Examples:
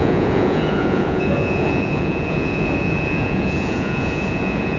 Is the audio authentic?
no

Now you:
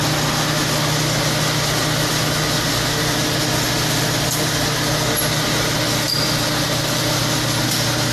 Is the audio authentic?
yes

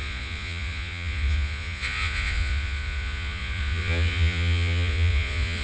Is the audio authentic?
no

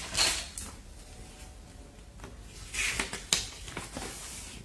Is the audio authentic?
yes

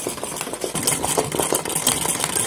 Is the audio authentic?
yes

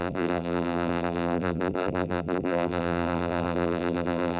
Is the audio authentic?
no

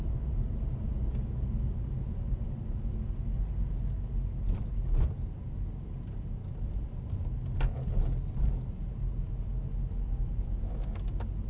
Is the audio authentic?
yes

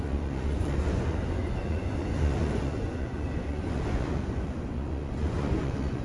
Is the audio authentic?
no